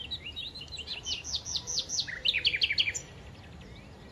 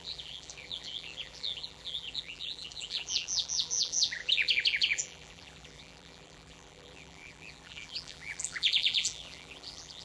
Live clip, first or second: first